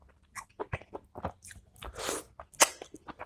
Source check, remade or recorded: recorded